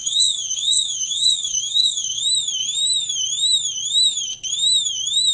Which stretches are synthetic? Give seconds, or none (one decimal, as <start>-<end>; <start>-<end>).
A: 0.0-2.2